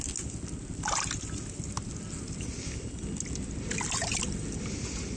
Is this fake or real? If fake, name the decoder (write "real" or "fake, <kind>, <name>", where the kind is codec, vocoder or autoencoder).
real